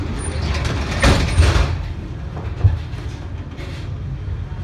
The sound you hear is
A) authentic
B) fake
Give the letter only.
A